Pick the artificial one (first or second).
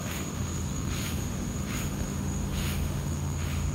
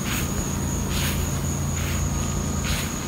first